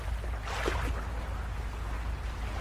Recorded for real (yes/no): yes